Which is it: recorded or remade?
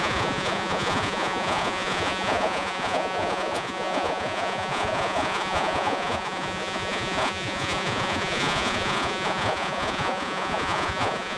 remade